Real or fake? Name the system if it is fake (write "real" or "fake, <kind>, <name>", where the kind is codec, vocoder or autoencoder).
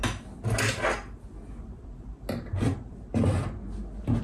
real